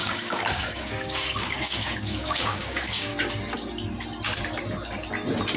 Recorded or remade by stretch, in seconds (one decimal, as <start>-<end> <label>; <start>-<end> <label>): 0.0-3.1 remade; 3.1-5.6 recorded